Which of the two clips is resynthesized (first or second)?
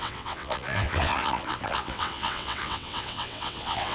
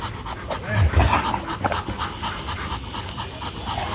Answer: first